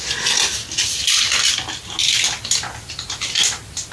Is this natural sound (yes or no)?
yes